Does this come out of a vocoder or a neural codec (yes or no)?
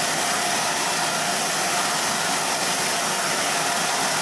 no